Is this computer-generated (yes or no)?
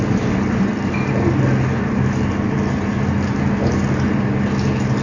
no